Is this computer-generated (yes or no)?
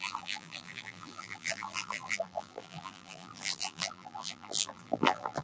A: yes